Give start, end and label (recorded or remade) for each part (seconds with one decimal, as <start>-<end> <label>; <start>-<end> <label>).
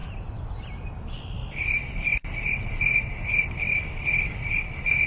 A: 0.0-0.8 recorded; 0.8-5.1 remade